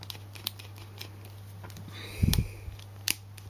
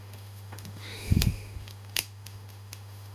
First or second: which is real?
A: first